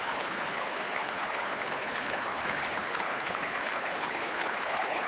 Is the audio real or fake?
fake